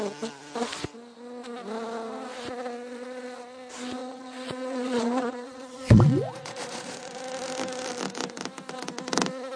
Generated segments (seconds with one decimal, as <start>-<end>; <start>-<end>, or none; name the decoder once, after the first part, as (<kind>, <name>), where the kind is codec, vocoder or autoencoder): 4.0-7.2 (vocoder, Vocos)

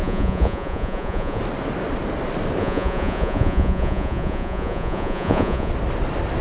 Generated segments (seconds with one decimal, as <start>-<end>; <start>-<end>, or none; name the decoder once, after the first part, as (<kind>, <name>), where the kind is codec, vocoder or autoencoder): 0.0-1.4 (vocoder, Vocos); 2.6-5.7